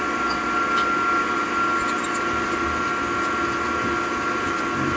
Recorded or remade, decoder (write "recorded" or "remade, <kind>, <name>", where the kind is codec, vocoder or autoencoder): recorded